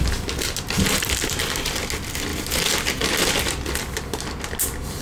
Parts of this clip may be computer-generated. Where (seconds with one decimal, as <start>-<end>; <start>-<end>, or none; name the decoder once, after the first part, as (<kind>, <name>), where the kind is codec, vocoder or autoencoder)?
none

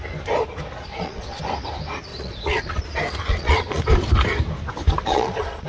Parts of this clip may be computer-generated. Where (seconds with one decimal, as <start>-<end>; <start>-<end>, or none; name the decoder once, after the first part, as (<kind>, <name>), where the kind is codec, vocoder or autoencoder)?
0.9-1.4 (vocoder, Vocos); 2.1-2.8; 3.3-3.8; 5.0-5.7

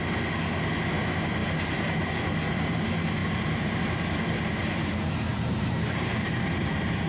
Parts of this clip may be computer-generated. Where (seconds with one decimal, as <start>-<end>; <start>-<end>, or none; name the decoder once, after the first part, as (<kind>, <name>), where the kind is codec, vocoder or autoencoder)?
1.4-2.1 (vocoder, BigVGAN v2); 3.2-3.8; 5.3-7.1

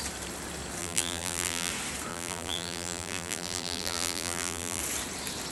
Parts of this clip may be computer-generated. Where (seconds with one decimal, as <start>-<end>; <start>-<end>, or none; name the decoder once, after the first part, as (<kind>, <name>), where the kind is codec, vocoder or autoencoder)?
0.8-1.7 (vocoder, BigVGAN v2); 2.1-4.8

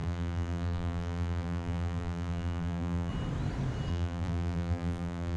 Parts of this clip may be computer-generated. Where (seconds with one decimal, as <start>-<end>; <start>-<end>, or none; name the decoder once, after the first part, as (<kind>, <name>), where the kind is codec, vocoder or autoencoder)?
0.0-3.1 (vocoder, BigVGAN v2); 3.9-5.4